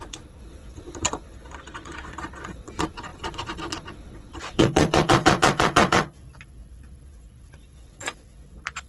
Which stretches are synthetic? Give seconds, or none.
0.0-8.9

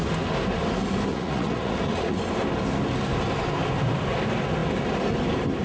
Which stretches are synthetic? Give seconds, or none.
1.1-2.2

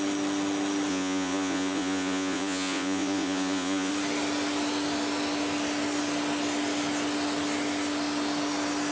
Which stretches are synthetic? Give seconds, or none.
0.9-3.9

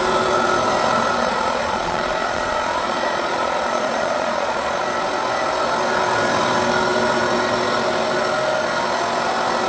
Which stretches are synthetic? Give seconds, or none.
1.2-4.8

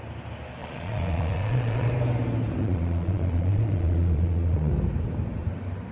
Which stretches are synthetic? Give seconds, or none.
0.6-1.9; 2.6-4.7